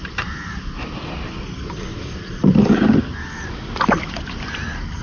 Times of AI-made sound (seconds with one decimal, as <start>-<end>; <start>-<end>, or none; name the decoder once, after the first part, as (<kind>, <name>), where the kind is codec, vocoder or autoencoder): 0.0-5.0 (vocoder, BigVGAN v2)

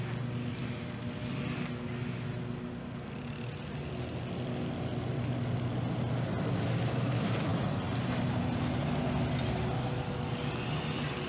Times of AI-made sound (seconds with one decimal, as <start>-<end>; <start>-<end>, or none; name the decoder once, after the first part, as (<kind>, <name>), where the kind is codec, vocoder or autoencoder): none

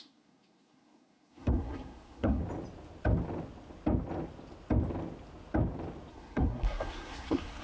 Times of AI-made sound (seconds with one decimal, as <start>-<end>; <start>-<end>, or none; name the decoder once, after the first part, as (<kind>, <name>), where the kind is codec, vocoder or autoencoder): 0.0-2.4 (codec, SNAC); 6.1-7.6

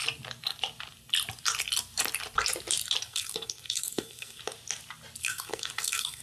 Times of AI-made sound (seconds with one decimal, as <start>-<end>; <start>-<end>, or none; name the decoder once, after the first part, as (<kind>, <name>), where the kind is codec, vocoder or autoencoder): 3.0-4.4 (codec, SNAC); 5.2-6.2